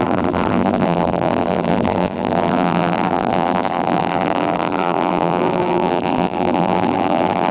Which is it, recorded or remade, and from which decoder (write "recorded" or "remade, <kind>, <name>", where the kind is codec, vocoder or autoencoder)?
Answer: remade, vocoder, BigVGAN v2